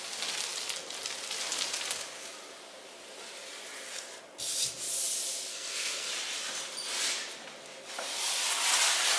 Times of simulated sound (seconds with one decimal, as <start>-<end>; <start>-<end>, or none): 5.5-6.1